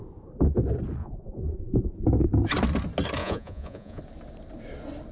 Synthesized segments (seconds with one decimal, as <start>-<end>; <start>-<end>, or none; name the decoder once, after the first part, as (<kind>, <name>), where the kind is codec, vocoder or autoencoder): 1.0-2.0 (vocoder, Vocos); 3.2-4.0